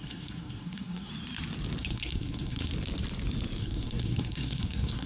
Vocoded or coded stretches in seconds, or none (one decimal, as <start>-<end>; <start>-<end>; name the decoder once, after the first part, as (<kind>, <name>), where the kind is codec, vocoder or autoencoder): 0.0-1.1 (codec, SNAC); 1.8-2.7; 3.6-5.1